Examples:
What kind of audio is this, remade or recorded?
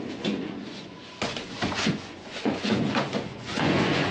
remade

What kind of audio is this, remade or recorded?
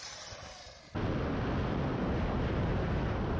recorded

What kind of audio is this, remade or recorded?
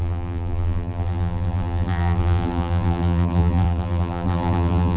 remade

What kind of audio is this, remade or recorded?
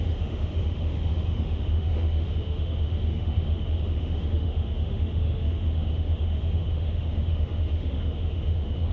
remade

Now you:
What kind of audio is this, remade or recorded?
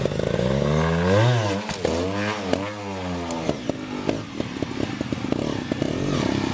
recorded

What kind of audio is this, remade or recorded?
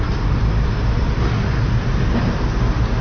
recorded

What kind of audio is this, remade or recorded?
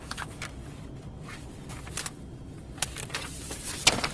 recorded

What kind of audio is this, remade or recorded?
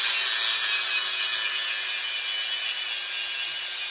recorded